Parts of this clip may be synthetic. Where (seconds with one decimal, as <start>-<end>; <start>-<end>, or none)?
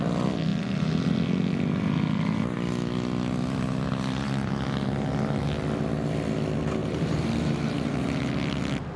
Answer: 6.8-8.3